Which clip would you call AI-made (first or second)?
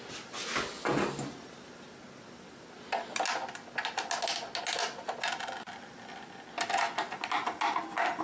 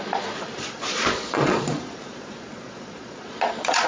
second